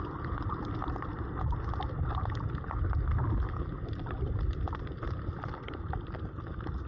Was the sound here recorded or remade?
recorded